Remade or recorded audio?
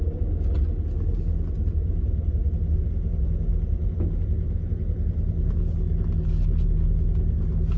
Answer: recorded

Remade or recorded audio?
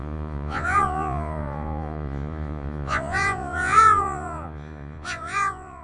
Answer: remade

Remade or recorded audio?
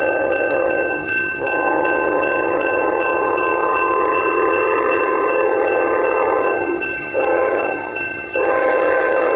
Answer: remade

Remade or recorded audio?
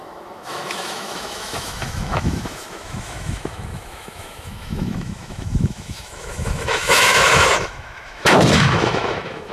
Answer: remade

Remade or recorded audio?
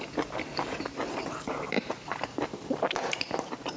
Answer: recorded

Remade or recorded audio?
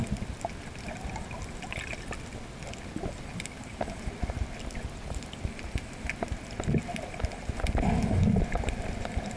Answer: recorded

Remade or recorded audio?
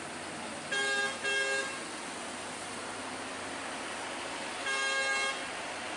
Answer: recorded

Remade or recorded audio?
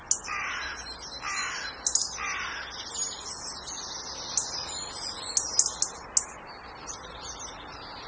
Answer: recorded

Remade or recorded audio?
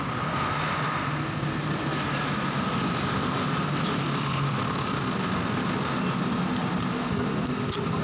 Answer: recorded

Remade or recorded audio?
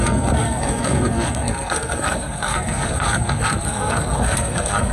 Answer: remade